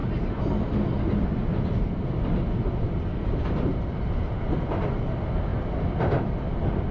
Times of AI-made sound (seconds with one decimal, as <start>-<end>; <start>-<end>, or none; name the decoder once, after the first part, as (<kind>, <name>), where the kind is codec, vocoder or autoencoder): none